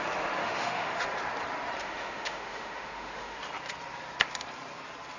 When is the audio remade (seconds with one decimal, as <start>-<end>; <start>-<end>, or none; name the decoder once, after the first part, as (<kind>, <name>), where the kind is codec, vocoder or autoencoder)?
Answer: 0.4-1.0 (autoencoder, DAC-VAE); 1.8-3.4